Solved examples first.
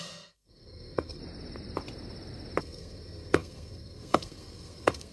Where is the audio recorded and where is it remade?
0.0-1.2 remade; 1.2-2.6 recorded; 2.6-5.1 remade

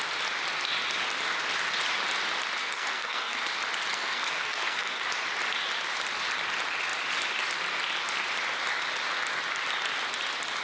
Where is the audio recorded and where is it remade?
0.0-2.6 recorded; 2.6-3.4 remade; 3.4-3.9 recorded; 3.9-5.0 remade; 5.0-10.6 recorded

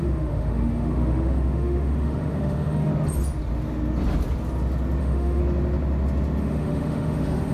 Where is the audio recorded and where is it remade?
0.0-2.9 remade; 2.9-5.0 recorded; 5.0-5.4 remade; 5.4-6.4 recorded; 6.4-7.5 remade

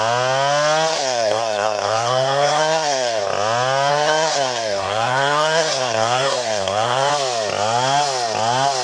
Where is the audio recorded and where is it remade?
0.0-0.9 recorded; 0.9-3.2 remade; 3.2-3.9 recorded; 3.9-7.1 remade; 7.1-8.8 recorded

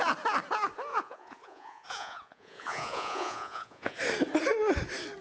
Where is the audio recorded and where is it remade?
0.0-0.9 recorded; 0.9-4.0 remade; 4.0-5.2 recorded

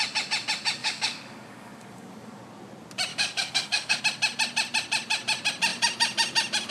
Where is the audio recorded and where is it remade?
0.0-0.8 recorded; 0.8-2.4 remade; 2.4-3.1 recorded; 3.1-4.0 remade; 4.0-6.7 recorded